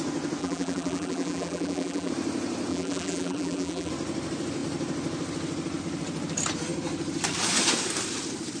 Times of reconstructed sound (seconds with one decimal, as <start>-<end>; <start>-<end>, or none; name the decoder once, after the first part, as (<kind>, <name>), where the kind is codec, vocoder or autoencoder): 0.4-2.1 (vocoder, BigVGAN v2); 2.7-3.9